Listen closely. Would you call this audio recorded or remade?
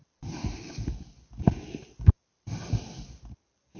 recorded